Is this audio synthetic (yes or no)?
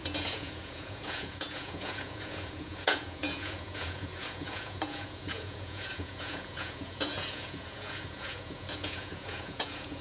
yes